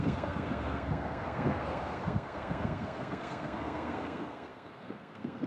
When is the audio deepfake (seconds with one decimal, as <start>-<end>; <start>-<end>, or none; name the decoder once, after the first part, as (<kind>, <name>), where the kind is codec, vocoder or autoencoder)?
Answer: 0.0-5.5 (codec, SNAC)